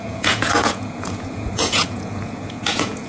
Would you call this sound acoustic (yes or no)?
no